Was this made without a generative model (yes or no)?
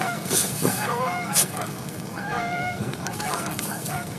no